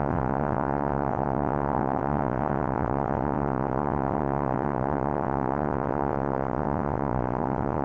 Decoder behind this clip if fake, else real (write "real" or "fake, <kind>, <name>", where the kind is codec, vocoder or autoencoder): fake, vocoder, WaveNeXt